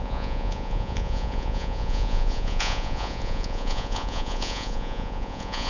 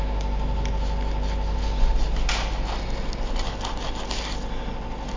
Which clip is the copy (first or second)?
first